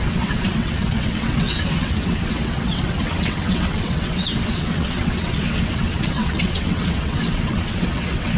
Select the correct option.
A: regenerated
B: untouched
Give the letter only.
A